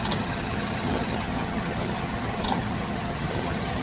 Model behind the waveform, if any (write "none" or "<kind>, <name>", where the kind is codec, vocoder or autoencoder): vocoder, HiFi-GAN